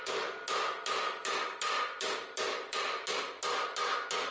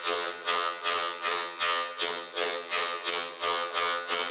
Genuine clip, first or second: first